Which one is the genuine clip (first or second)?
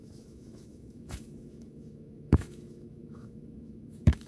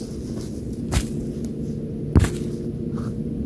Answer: second